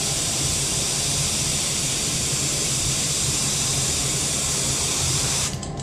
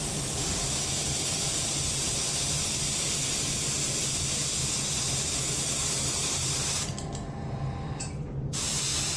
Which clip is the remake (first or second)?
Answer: first